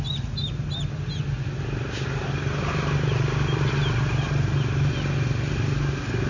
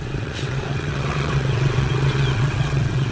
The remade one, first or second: second